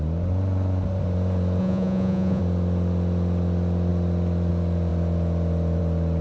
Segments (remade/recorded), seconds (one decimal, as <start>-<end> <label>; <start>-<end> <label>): 0.0-1.6 recorded; 1.6-2.4 remade; 2.4-6.2 recorded